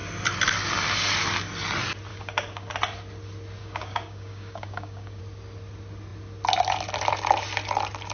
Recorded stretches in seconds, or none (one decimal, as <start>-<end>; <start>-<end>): 0.0-2.1; 2.7-3.6; 5.2-8.1